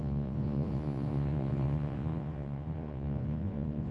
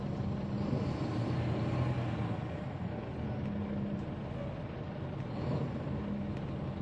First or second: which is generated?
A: first